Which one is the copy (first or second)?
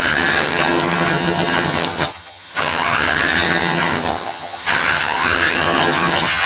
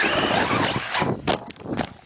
first